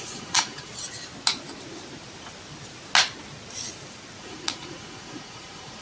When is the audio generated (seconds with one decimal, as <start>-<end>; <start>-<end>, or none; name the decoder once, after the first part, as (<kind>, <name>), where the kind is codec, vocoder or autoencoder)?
0.0-0.7 (vocoder, Vocos); 4.2-5.8